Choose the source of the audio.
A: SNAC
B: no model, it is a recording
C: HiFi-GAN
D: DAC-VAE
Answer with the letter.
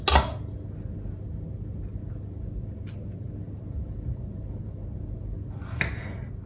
B